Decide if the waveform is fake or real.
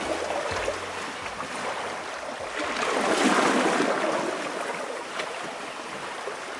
real